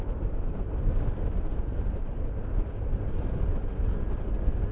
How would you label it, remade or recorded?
recorded